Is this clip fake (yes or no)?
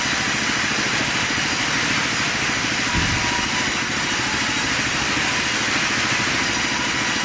no